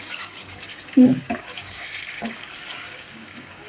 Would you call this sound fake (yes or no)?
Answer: yes